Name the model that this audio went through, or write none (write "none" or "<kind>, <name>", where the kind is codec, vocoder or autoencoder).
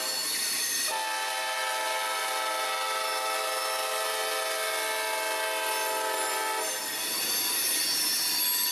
none